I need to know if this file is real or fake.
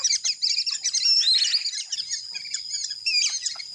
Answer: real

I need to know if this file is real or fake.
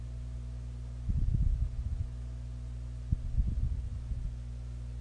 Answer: real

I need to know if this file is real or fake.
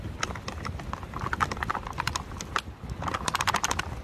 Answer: real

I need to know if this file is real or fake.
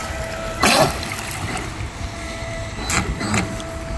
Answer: real